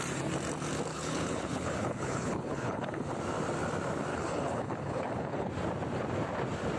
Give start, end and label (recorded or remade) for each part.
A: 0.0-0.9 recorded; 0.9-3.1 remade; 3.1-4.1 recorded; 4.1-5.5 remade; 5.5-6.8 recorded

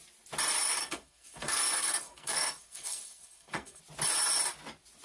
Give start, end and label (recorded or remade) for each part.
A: 0.0-0.8 recorded; 0.8-3.8 remade; 3.8-5.0 recorded

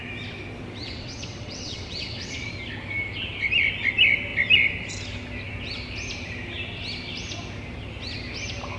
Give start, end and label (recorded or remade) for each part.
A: 0.0-0.8 recorded; 0.8-2.5 remade; 2.5-8.8 recorded

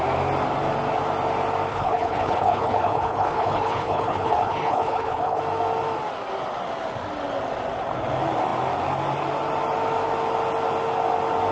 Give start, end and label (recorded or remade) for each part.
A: 0.0-1.7 recorded; 1.7-5.4 remade; 5.4-11.5 recorded

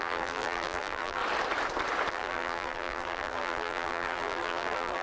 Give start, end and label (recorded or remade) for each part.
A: 0.0-1.2 remade; 1.2-2.1 recorded; 2.1-5.0 remade

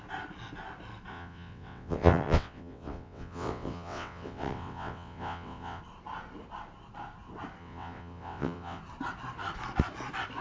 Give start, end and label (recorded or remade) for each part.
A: 0.0-1.1 recorded; 1.1-5.8 remade; 5.8-7.6 recorded; 7.6-8.8 remade; 8.8-10.4 recorded

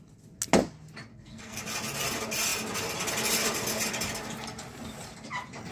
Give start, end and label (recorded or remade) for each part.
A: 0.0-1.1 recorded; 1.1-1.6 remade; 1.6-5.7 recorded

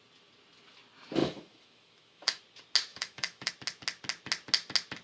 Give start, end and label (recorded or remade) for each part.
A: 0.0-1.2 recorded; 1.2-2.4 remade; 2.4-2.9 recorded; 2.9-3.5 remade; 3.5-5.0 recorded